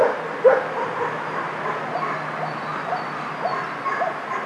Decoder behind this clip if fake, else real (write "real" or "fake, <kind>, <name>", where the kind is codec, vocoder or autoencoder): real